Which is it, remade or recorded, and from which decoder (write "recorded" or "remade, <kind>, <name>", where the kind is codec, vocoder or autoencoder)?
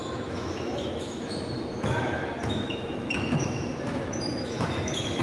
remade, autoencoder, DAC-VAE